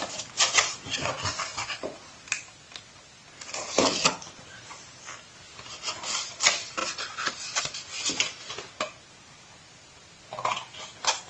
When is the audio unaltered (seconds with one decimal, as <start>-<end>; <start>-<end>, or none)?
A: 0.0-11.3